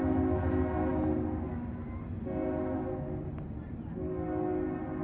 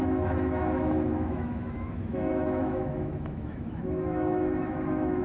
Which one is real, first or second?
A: first